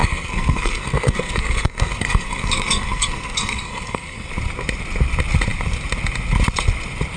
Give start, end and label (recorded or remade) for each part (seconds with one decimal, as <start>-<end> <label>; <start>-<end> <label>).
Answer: 0.0-4.3 remade; 4.3-7.2 recorded